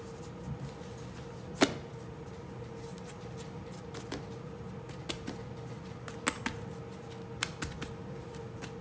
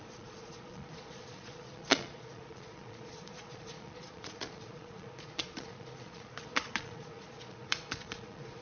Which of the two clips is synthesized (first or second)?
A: second